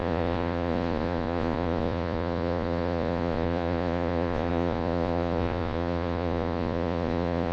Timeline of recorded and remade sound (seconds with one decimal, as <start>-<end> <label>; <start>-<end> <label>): 0.0-7.5 remade